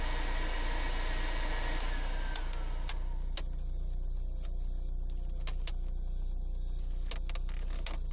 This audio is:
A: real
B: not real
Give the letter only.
A